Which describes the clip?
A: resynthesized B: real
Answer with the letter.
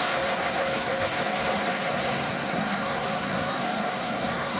A